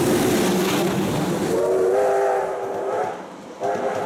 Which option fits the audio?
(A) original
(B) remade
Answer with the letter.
A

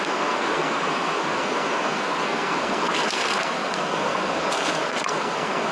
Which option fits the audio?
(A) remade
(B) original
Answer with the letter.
A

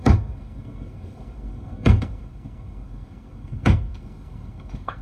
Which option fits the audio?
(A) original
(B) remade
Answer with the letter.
B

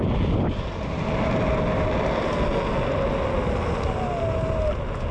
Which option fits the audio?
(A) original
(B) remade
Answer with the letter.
A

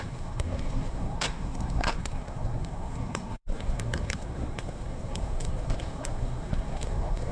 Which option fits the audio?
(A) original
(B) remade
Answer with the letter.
B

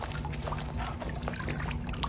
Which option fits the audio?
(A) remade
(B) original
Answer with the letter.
B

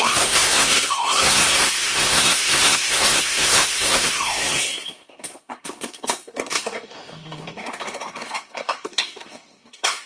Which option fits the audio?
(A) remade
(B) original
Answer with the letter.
A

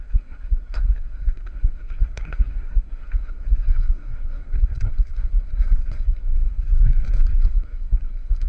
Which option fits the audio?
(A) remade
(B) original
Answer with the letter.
A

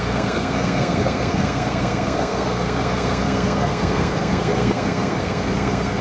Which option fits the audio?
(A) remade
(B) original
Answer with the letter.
A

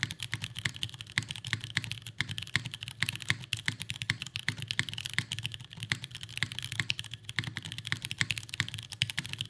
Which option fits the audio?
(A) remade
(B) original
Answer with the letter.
B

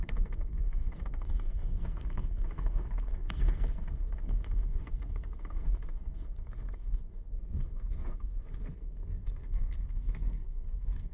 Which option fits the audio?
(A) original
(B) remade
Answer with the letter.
B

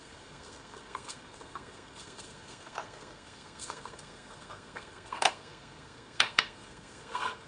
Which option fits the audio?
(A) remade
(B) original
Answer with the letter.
A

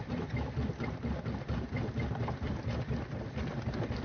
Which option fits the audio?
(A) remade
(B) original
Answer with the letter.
B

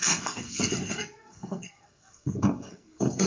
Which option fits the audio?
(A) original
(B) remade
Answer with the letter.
B